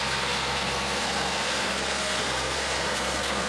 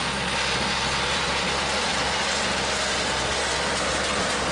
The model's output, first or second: first